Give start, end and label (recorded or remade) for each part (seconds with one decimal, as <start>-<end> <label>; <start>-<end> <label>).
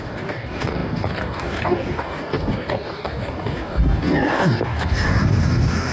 0.0-5.9 remade